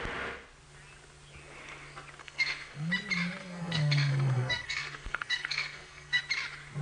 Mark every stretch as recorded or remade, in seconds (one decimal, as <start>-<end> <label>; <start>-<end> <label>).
0.0-2.2 recorded; 2.2-2.9 remade; 2.9-3.4 recorded; 3.4-6.2 remade; 6.2-6.8 recorded